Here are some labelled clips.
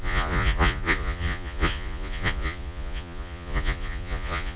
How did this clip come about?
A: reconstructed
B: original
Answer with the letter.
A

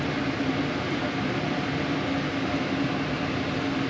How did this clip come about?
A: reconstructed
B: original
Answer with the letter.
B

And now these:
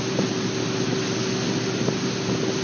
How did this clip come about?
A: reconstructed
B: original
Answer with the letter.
B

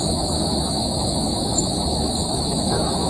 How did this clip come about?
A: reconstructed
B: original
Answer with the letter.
A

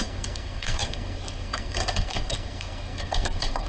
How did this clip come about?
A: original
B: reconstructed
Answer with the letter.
B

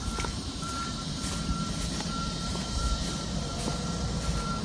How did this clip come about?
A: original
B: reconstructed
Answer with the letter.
B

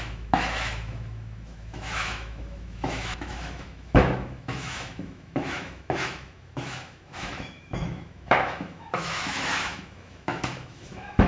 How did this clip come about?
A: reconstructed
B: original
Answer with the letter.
A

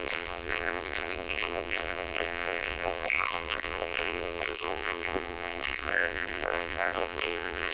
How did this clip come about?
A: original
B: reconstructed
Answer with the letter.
B